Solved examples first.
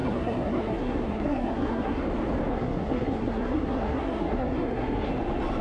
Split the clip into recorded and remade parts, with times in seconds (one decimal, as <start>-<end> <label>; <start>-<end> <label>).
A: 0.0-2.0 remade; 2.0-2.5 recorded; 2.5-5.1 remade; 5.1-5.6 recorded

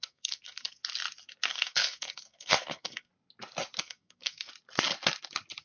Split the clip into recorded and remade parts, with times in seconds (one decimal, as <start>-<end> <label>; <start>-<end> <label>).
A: 0.0-0.8 remade; 0.8-1.5 recorded; 1.5-3.1 remade; 3.1-3.8 recorded; 3.8-4.5 remade; 4.5-5.6 recorded

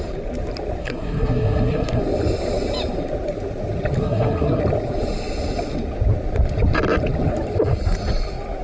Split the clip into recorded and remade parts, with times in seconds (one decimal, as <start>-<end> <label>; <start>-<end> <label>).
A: 0.0-0.8 recorded; 0.8-2.0 remade; 2.0-4.0 recorded; 4.0-4.6 remade; 4.6-8.6 recorded

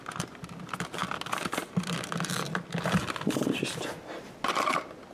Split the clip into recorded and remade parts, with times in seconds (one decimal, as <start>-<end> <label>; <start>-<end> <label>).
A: 0.0-5.1 recorded

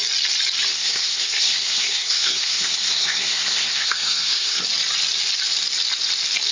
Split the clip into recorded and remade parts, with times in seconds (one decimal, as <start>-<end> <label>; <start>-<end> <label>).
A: 0.0-0.7 recorded; 0.7-4.6 remade; 4.6-6.5 recorded